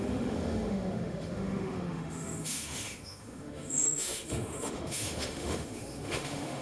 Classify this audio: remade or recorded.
remade